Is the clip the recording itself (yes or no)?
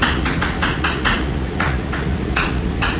no